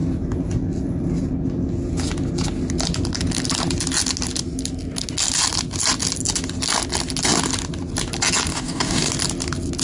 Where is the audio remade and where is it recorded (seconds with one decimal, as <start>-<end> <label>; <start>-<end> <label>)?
0.0-8.5 recorded; 8.5-9.1 remade; 9.1-9.8 recorded